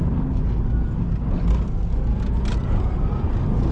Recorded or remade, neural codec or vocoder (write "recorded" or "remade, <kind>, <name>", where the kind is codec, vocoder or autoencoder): recorded